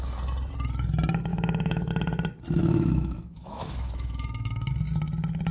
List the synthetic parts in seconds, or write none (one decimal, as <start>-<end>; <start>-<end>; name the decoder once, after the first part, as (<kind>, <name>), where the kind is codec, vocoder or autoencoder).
1.3-1.9 (autoencoder, DAC-VAE); 2.6-4.7